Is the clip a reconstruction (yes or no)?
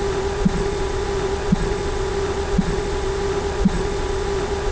yes